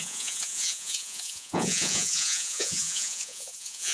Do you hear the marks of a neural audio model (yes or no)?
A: yes